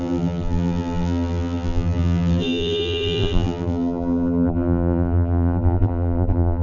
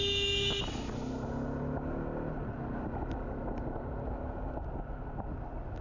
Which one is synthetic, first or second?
first